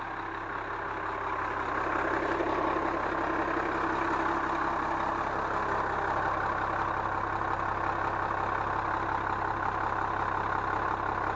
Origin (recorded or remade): recorded